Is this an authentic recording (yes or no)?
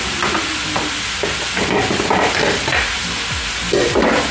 yes